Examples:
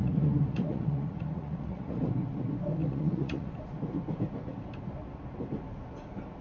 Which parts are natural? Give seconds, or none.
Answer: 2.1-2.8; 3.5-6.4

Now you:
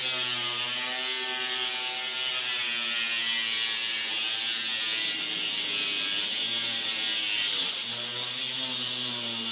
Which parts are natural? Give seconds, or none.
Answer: 0.0-9.5

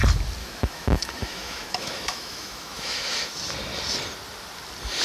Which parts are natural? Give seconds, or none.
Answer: 0.0-0.4; 3.4-5.0

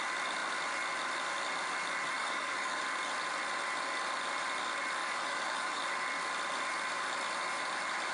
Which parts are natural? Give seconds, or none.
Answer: 0.0-2.2; 2.8-5.0; 5.8-8.1

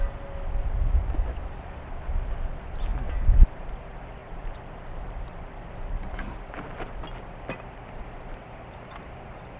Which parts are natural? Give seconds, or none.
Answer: 0.0-2.9; 3.6-4.2; 6.5-9.6

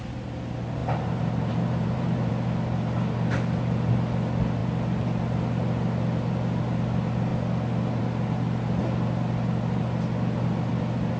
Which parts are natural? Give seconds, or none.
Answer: 0.0-0.8; 2.3-11.2